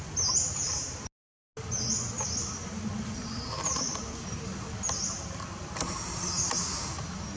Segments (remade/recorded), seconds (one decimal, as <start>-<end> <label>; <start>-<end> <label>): 0.0-7.4 recorded